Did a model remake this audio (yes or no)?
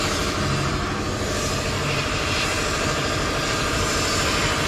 yes